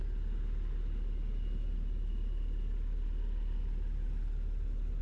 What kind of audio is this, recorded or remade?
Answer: recorded